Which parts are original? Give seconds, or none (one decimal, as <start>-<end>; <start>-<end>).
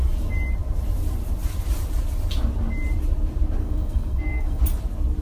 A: 0.0-3.6; 4.6-5.2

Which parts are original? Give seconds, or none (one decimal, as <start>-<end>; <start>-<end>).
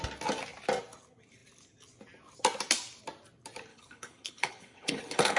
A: 0.0-3.7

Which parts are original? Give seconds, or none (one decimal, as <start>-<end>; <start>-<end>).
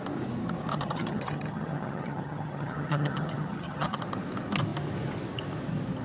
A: 0.0-0.7; 4.0-6.0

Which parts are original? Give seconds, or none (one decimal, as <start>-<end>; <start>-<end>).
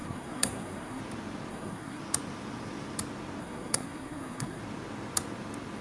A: 1.0-1.5; 2.0-3.4; 4.6-5.8